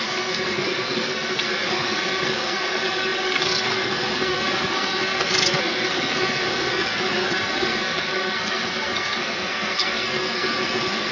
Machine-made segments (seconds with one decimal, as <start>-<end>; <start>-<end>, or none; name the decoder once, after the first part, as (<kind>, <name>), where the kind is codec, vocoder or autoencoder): 0.0-11.1 (codec, SNAC)